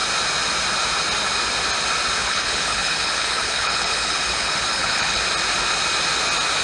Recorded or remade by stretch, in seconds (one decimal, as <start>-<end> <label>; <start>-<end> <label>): 0.0-2.2 recorded; 2.2-5.2 remade; 5.2-6.6 recorded